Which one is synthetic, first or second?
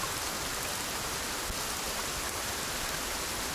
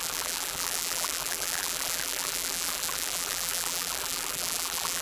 second